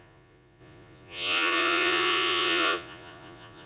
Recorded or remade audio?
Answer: remade